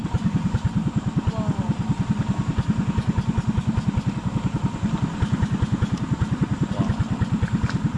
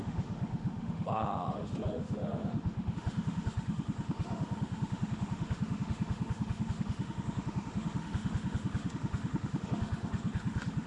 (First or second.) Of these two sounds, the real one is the first